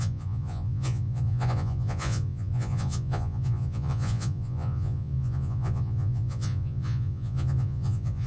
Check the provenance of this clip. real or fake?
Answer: fake